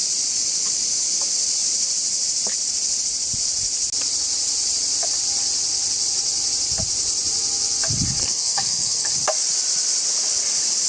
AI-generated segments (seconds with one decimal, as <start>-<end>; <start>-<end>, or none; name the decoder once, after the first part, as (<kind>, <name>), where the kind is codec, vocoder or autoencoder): 8.2-9.1 (codec, SNAC)